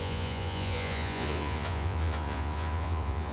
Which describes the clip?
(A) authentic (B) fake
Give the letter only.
B